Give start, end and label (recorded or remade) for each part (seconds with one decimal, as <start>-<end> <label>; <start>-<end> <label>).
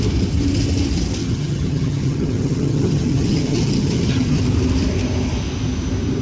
0.0-1.2 recorded; 1.2-4.4 remade; 4.4-6.2 recorded